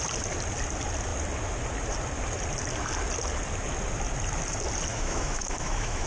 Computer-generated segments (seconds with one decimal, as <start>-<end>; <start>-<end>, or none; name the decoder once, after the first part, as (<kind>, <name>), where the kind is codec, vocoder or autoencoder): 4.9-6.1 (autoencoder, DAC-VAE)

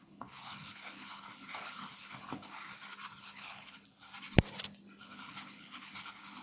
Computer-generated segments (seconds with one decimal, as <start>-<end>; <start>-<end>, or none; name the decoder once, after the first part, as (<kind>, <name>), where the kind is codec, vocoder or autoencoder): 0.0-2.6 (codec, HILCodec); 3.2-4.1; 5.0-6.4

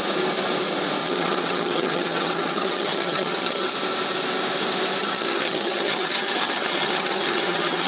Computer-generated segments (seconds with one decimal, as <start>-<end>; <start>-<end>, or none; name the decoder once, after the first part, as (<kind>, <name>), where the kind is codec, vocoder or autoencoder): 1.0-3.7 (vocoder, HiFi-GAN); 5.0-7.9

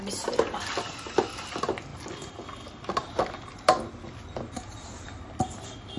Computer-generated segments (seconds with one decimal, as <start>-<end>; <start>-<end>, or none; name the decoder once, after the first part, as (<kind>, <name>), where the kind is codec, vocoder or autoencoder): none